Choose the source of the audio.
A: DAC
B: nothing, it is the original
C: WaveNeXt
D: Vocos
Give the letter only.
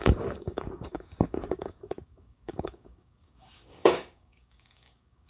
A